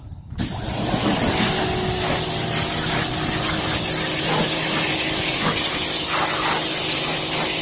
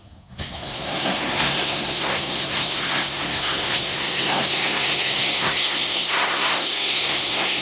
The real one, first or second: first